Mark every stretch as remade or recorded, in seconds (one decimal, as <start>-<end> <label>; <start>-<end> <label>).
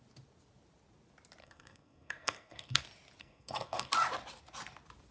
0.0-1.4 recorded; 1.4-2.8 remade; 2.8-3.2 recorded; 3.2-3.9 remade; 3.9-5.1 recorded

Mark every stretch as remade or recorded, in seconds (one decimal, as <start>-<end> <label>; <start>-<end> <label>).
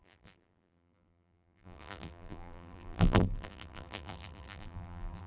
0.0-5.3 remade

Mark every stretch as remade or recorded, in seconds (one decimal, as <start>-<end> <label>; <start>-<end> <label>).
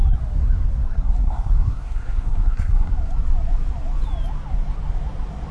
0.0-0.8 recorded; 0.8-2.9 remade; 2.9-5.5 recorded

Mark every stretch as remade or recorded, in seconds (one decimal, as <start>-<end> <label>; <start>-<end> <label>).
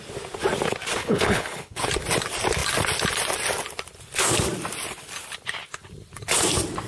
0.0-1.0 recorded; 1.0-1.9 remade; 1.9-6.9 recorded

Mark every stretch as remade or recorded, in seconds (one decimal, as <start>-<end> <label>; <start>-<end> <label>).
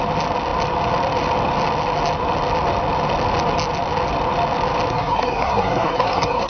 0.0-4.9 recorded; 4.9-6.5 remade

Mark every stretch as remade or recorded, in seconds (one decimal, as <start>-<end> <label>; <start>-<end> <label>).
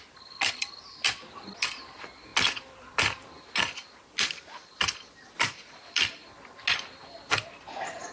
0.0-8.1 recorded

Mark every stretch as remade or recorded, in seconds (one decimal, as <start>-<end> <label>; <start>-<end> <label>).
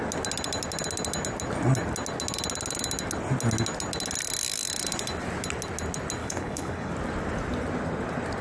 0.0-6.2 recorded; 6.2-6.9 remade; 6.9-8.4 recorded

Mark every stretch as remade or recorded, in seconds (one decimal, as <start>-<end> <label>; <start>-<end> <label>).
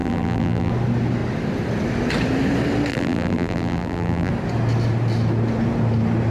0.0-0.7 remade; 0.7-2.9 recorded; 2.9-4.3 remade; 4.3-6.3 recorded